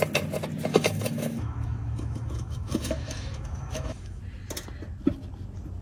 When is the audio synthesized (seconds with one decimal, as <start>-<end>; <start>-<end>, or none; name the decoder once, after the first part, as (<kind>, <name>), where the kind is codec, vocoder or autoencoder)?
0.7-4.2 (autoencoder, DAC-VAE)